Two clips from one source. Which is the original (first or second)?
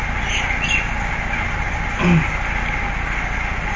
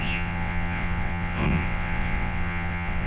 first